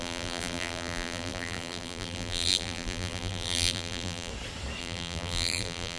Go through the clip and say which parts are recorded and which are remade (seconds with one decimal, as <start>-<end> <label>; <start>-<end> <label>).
0.0-4.3 remade; 4.3-4.8 recorded; 4.8-6.0 remade